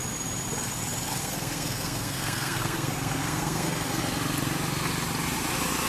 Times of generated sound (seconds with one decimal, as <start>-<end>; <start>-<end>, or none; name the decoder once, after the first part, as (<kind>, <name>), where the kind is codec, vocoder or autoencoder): 1.2-4.0 (codec, SNAC)